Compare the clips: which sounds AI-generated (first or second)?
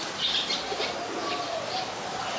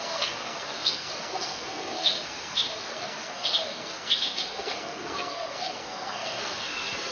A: second